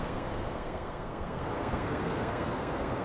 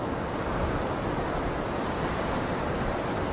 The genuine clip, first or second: second